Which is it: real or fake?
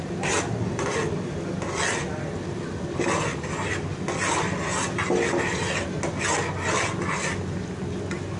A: real